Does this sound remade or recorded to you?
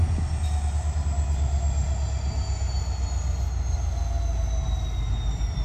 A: recorded